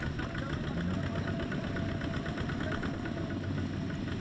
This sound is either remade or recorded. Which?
recorded